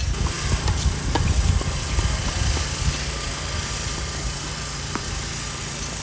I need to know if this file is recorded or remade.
recorded